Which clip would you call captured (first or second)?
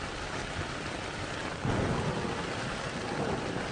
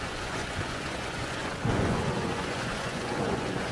first